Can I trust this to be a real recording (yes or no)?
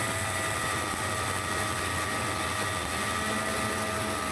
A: yes